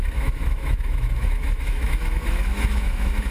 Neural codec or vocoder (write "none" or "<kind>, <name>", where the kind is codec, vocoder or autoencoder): autoencoder, DAC-VAE